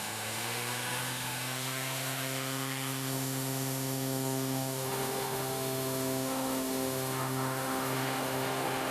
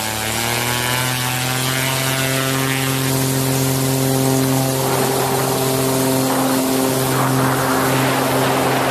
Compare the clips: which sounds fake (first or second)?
first